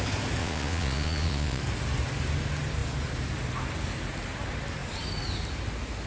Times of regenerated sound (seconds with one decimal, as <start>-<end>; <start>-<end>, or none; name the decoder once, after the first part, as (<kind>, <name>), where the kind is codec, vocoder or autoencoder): 0.4-1.6 (vocoder, Vocos)